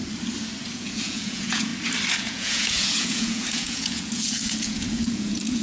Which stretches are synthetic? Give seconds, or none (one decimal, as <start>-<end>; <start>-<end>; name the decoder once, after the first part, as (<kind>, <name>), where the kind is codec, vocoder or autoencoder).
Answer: 0.7-1.7 (vocoder, Vocos); 2.2-5.6